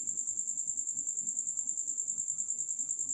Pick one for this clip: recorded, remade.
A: recorded